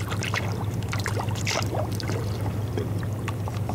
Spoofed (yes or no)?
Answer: no